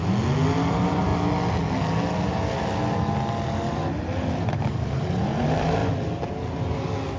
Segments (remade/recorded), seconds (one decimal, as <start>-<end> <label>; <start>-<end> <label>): 0.0-0.7 recorded; 0.7-1.1 remade; 1.1-4.4 recorded; 4.4-5.8 remade; 5.8-7.2 recorded